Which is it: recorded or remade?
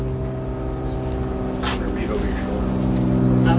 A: recorded